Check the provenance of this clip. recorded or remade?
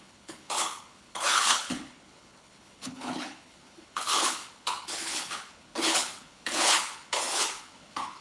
remade